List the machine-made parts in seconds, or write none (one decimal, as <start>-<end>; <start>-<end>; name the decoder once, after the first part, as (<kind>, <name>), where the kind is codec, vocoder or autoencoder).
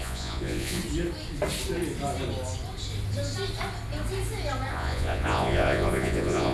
0.0-0.8 (vocoder, Vocos); 4.7-6.5